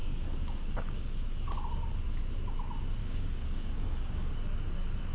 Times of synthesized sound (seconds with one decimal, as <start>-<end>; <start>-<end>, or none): 0.0-1.5; 3.0-4.3